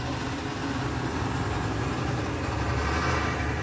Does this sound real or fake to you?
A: real